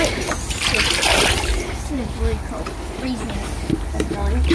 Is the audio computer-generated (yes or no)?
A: no